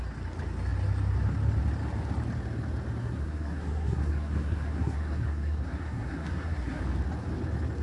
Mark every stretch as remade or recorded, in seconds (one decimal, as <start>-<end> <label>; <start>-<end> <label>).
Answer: 0.0-3.0 recorded; 3.0-6.8 remade; 6.8-7.8 recorded